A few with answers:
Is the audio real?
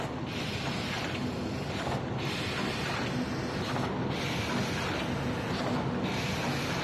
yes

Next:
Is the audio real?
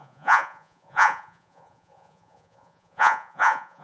no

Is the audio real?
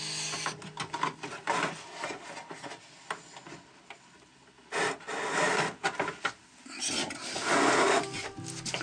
yes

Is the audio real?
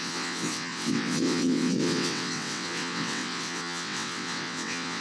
no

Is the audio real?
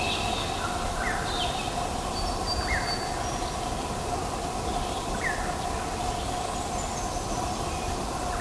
yes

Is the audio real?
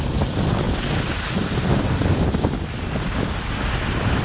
yes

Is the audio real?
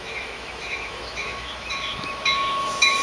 no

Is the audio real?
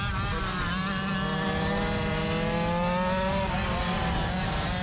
yes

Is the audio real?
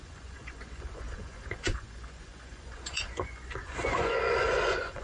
no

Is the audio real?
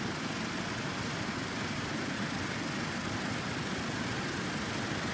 yes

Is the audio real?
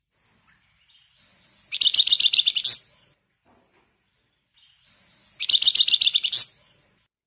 yes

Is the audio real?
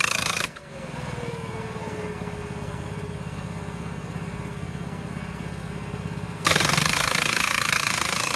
no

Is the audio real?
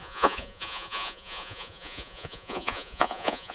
no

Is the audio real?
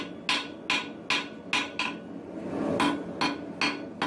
yes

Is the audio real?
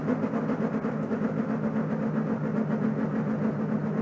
yes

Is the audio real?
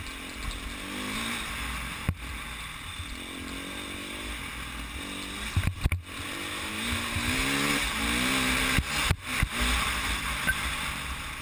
yes